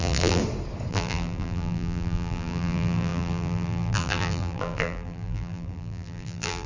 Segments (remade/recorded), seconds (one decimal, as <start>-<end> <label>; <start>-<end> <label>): 0.0-0.4 remade; 0.4-0.9 recorded; 0.9-6.7 remade